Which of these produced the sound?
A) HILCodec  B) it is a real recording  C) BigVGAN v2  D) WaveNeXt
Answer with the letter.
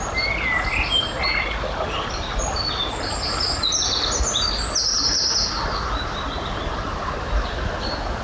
B